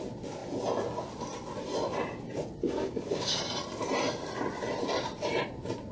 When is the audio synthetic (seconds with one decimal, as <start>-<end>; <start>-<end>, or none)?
2.6-3.4